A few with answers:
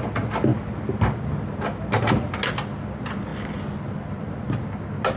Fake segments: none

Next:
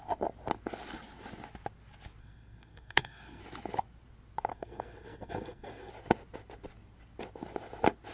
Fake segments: 2.2-3.4 (codec, SNAC); 4.5-5.9

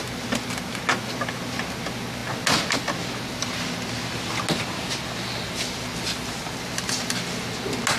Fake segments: none

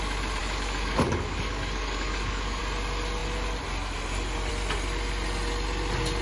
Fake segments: 0.4-2.6 (codec, DAC)

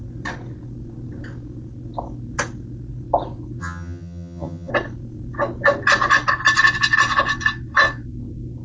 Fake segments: 3.6-4.7 (vocoder, HiFi-GAN)

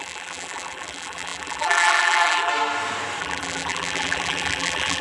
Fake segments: 0.0-2.5 (vocoder, BigVGAN v2); 3.2-5.0

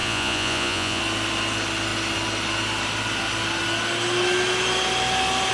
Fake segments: 0.0-1.0 (vocoder, Vocos)

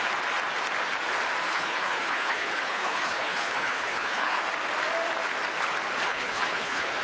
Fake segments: 1.5-4.4 (codec, HILCodec); 6.1-7.0